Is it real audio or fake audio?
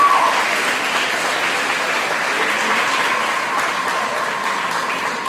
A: real